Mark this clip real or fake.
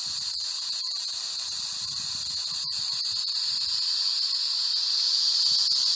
fake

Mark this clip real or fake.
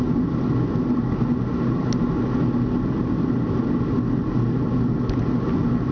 real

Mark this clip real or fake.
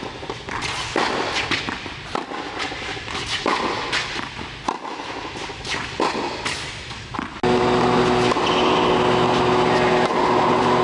real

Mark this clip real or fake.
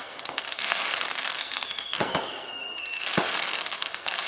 fake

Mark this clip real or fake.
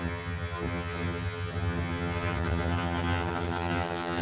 fake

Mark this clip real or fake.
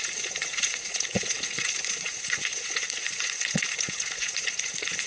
fake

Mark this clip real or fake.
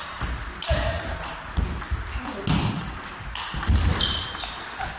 real